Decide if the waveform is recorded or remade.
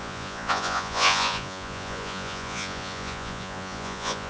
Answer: remade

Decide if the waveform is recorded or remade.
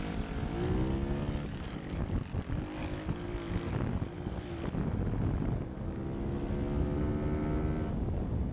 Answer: recorded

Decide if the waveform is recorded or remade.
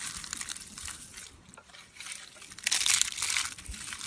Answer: remade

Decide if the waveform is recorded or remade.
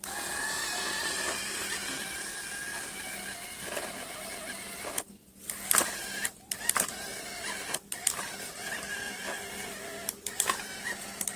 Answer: recorded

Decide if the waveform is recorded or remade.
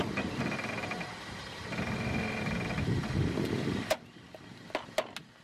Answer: recorded